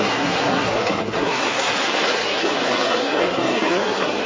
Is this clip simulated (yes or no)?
yes